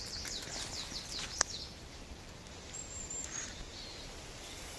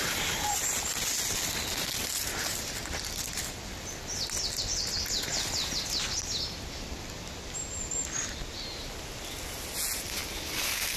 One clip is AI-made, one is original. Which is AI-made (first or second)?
first